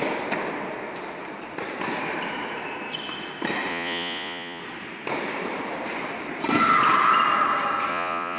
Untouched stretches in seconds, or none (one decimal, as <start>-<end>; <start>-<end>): 0.0-3.7; 4.6-7.9